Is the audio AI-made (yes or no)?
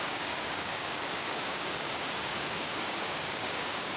yes